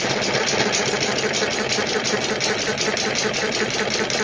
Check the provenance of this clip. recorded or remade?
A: recorded